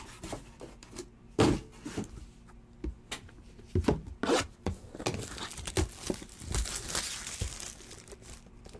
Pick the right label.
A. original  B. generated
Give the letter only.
A